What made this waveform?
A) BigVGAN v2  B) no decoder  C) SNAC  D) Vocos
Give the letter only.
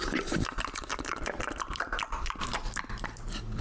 A